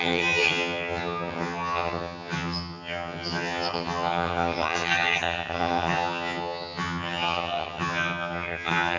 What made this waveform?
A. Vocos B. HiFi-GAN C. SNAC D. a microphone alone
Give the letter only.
B